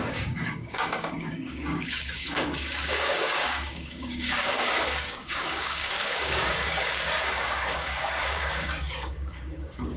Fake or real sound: fake